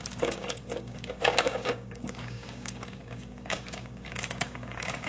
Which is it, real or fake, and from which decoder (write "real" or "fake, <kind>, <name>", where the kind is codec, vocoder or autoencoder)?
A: fake, codec, DAC